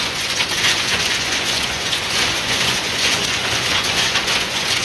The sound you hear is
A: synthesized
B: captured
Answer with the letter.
A